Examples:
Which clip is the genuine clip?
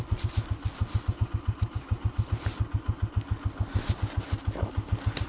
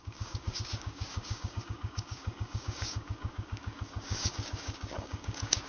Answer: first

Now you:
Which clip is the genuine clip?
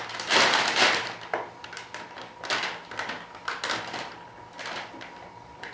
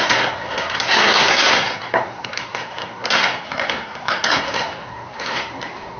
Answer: first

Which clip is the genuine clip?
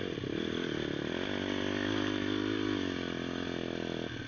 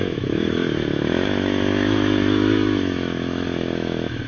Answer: first